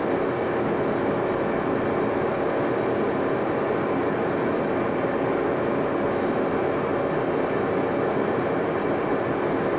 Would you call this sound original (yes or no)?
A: yes